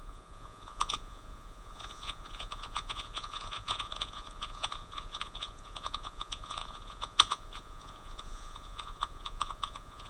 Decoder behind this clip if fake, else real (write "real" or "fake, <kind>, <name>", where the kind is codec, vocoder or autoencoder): fake, vocoder, Vocos